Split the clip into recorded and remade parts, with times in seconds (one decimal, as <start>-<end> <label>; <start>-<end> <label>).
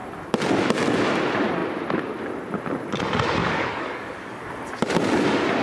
0.0-3.4 recorded; 3.4-4.5 remade; 4.5-5.6 recorded